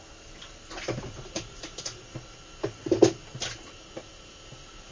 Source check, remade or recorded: recorded